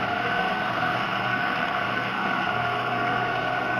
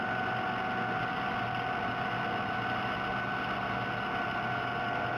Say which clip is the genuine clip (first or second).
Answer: second